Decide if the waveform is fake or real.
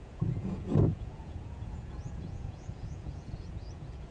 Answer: fake